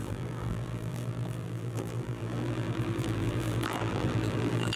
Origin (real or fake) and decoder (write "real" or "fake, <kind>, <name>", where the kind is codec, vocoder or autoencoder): fake, vocoder, BigVGAN v2